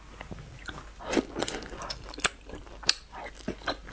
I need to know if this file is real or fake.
real